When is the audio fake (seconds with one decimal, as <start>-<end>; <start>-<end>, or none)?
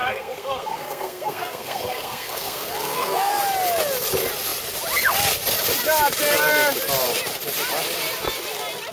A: 0.0-3.4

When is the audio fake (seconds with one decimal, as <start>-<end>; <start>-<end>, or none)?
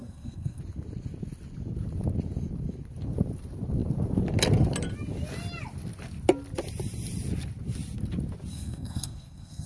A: 0.0-0.6; 8.5-9.7